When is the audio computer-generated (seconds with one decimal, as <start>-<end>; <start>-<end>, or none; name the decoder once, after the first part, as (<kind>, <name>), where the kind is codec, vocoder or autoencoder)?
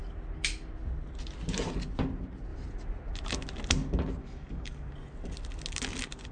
4.2-4.9 (codec, DAC)